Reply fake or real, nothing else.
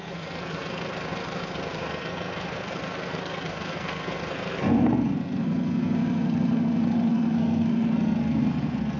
fake